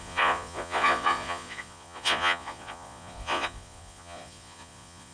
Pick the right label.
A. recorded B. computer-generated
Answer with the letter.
B